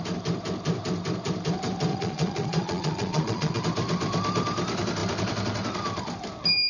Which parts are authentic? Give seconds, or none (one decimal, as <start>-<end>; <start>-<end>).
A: 0.0-1.9; 3.6-6.7